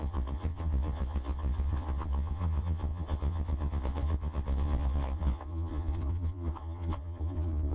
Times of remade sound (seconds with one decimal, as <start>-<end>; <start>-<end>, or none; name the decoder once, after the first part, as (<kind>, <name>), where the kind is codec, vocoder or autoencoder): 0.0-7.7 (vocoder, Vocos)